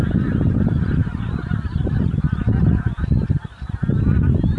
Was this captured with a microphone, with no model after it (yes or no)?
yes